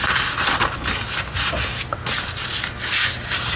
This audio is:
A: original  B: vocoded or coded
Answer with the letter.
A